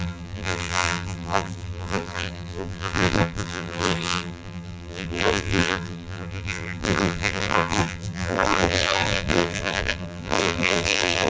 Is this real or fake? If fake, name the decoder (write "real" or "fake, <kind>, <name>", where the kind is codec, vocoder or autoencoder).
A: fake, vocoder, BigVGAN v2